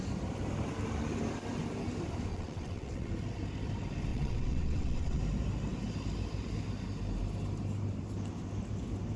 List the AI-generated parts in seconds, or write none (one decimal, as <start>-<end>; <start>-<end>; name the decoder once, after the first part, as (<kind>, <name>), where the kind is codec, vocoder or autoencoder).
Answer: 2.3-3.1 (vocoder, WaveNeXt); 4.1-5.2